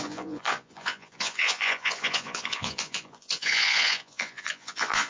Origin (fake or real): fake